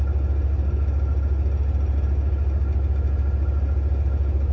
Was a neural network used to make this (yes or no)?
no